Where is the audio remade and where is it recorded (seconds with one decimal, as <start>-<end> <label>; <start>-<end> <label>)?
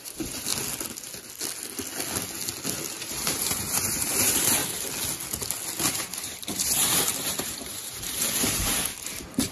0.0-0.5 remade; 0.5-3.0 recorded; 3.0-4.6 remade; 4.6-5.9 recorded; 5.9-9.5 remade